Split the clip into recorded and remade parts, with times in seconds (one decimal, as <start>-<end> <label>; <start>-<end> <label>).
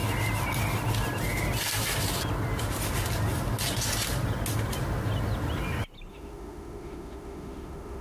0.0-6.1 recorded; 6.1-8.0 remade